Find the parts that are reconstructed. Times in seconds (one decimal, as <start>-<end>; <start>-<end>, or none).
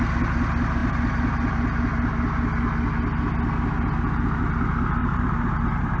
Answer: 5.0-6.0